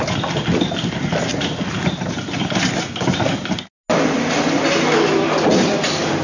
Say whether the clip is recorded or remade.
recorded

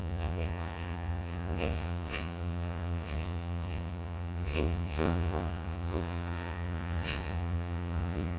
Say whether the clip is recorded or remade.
remade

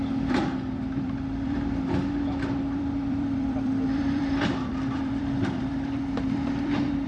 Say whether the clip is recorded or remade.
remade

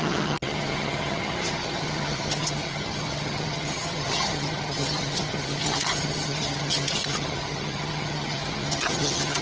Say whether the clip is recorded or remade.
remade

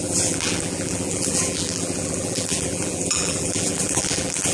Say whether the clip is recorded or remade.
remade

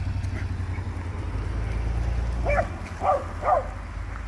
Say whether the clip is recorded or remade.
recorded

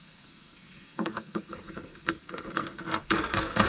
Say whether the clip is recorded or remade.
remade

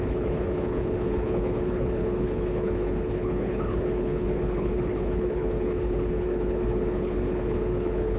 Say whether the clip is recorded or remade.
remade